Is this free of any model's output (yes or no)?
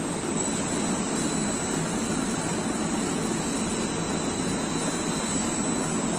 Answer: yes